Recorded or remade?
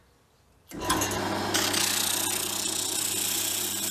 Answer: recorded